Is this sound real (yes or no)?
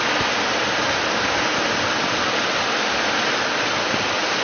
yes